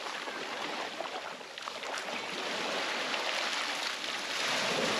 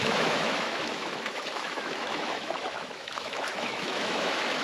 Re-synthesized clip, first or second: second